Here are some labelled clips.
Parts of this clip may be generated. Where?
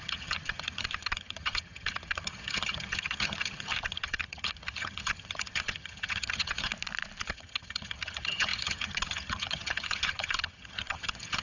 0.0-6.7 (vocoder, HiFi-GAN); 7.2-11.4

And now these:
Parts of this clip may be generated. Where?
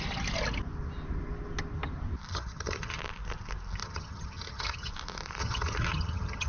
2.3-3.0 (vocoder, HiFi-GAN); 3.8-4.9; 5.4-6.5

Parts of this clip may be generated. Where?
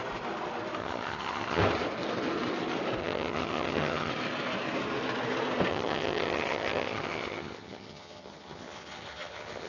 0.8-1.6 (vocoder, HiFi-GAN); 3.0-4.1; 5.7-9.7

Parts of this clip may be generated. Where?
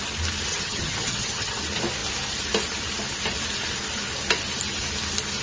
0.5-1.6 (vocoder, HiFi-GAN)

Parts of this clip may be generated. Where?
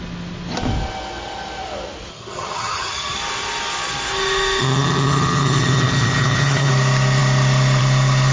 2.1-3.2 (vocoder, HiFi-GAN); 4.6-6.7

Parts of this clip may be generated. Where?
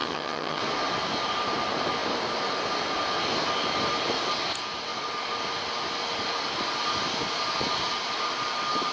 0.0-0.6 (vocoder, HiFi-GAN)